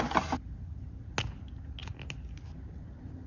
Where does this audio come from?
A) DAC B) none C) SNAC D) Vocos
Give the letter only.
B